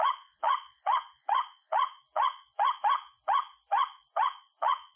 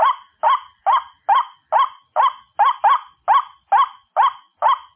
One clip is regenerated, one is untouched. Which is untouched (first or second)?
second